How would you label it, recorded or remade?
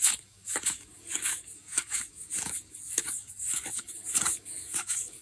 remade